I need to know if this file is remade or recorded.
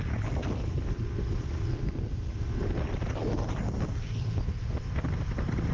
recorded